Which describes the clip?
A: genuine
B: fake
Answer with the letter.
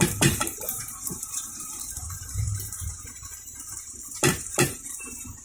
B